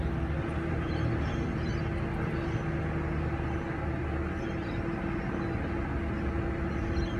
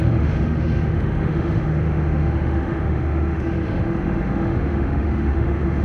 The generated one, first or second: second